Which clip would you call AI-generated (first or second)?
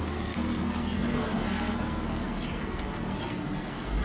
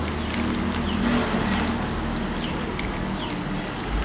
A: first